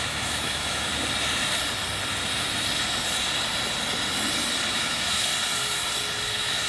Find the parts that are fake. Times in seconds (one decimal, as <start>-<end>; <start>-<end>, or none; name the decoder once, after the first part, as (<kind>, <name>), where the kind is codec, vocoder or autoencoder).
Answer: 0.0-0.9 (autoencoder, DAC-VAE); 4.7-5.3; 6.3-6.7